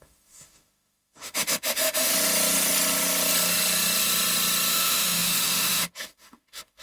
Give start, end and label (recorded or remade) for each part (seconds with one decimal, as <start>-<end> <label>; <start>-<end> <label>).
0.0-2.1 remade; 2.1-4.7 recorded; 4.7-6.8 remade